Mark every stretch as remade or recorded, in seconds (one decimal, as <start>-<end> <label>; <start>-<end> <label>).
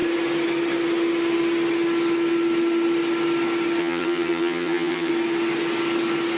0.0-3.8 recorded; 3.8-5.1 remade; 5.1-6.4 recorded